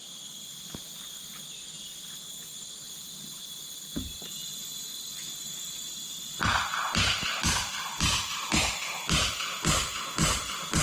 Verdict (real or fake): real